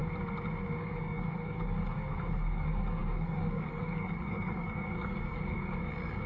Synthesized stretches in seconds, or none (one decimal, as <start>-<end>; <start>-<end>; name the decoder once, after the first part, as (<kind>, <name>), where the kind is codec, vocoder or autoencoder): 0.8-6.3 (codec, DAC)